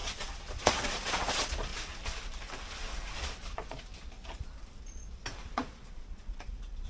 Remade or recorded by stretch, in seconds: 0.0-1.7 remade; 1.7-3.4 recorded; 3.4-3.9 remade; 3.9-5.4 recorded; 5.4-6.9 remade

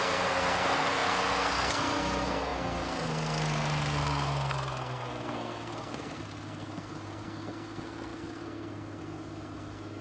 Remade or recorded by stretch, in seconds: 0.0-10.0 remade

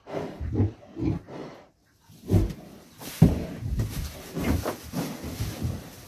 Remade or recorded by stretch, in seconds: 0.0-1.4 recorded; 1.4-4.6 remade; 4.6-6.1 recorded

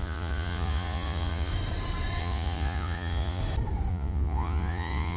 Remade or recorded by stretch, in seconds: 0.0-1.5 remade; 1.5-2.2 recorded; 2.2-3.4 remade; 3.4-3.9 recorded; 3.9-5.2 remade

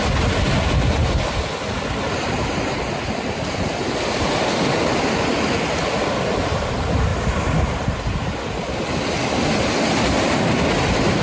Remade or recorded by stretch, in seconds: 0.0-11.2 recorded

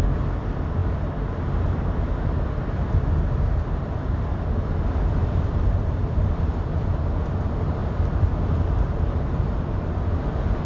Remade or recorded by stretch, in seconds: 0.0-5.2 recorded; 5.2-6.1 remade; 6.1-7.8 recorded; 7.8-9.8 remade; 9.8-10.7 recorded

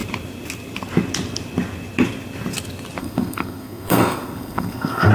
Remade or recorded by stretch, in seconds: 0.0-3.0 recorded; 3.0-5.1 remade